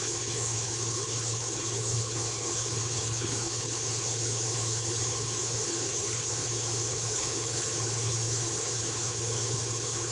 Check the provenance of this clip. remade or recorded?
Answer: remade